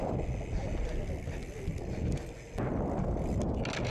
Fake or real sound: real